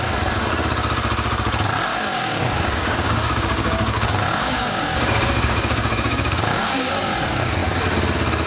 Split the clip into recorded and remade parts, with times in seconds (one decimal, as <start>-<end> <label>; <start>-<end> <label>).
0.0-1.9 recorded; 1.9-6.9 remade; 6.9-8.5 recorded